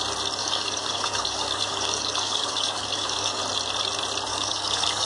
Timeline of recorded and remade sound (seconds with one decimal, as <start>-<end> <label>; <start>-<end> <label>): 0.0-0.4 recorded; 0.4-3.4 remade; 3.4-4.3 recorded; 4.3-5.1 remade